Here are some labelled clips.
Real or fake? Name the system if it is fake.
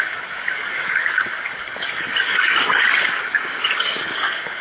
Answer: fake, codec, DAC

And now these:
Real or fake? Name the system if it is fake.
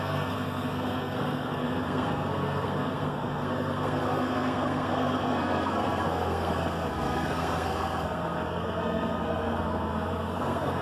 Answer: fake, codec, SNAC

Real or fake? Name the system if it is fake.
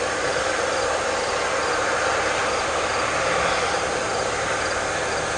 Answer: real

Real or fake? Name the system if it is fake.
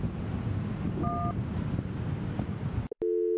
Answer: real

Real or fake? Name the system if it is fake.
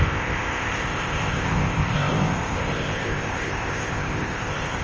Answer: fake, codec, ZipCodec